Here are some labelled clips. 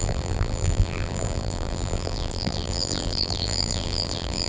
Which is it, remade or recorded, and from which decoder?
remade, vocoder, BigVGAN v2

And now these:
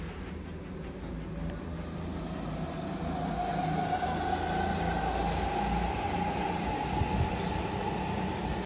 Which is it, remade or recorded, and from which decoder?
recorded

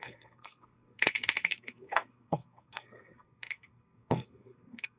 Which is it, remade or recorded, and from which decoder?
remade, codec, SNAC